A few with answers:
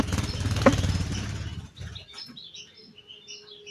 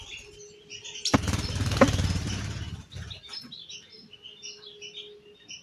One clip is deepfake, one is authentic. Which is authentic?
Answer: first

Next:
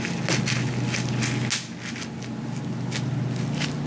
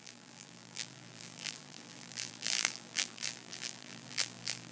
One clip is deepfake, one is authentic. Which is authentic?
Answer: first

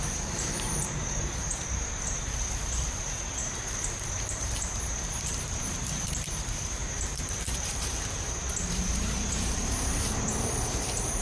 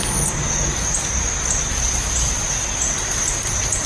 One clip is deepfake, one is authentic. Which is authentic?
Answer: second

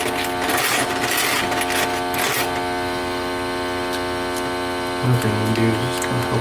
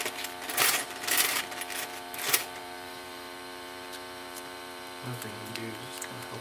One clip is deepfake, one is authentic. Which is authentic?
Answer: first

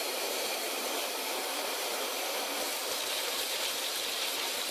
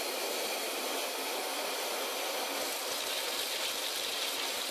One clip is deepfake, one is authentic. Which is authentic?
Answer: second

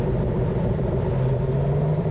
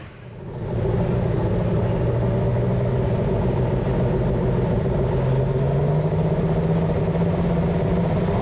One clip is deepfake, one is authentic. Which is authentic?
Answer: second